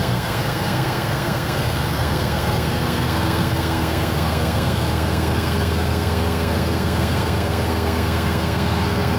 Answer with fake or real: fake